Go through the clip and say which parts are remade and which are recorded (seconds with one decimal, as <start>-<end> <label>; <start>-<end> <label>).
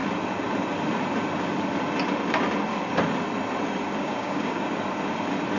0.0-4.0 recorded; 4.0-4.7 remade; 4.7-5.6 recorded